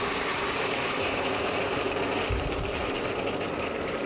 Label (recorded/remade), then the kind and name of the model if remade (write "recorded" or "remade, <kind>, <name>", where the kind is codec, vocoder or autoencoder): remade, vocoder, BigVGAN v2